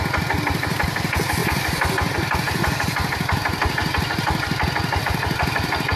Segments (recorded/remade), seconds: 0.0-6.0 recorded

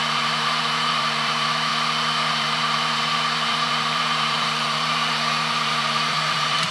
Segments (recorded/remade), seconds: 0.0-1.7 remade; 1.7-2.3 recorded; 2.3-6.7 remade

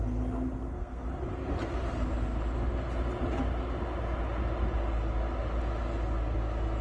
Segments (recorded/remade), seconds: 0.0-0.6 recorded; 0.6-1.2 remade; 1.2-6.8 recorded

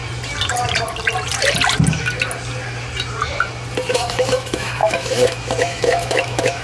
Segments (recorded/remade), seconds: 0.0-3.9 recorded; 3.9-6.6 remade

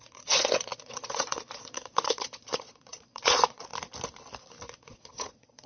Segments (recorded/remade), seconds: 0.0-3.7 remade; 3.7-4.8 recorded; 4.8-5.7 remade

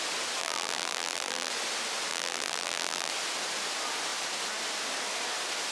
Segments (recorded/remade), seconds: 0.0-0.4 recorded; 0.4-1.5 remade; 1.5-2.1 recorded; 2.1-3.1 remade; 3.1-5.7 recorded